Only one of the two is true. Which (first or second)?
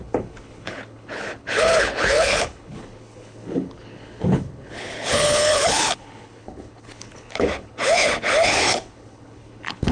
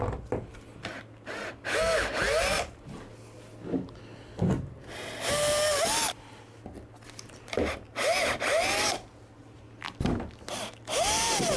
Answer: second